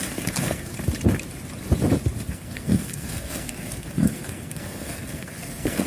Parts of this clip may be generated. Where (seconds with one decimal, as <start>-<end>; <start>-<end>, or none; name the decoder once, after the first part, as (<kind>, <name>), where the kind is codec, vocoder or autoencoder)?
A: 0.0-0.7 (codec, SNAC); 2.3-5.9